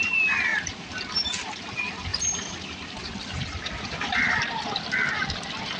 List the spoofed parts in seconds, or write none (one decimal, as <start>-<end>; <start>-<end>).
0.5-1.7; 2.1-5.8